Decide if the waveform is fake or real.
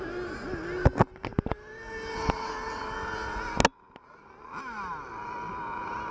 real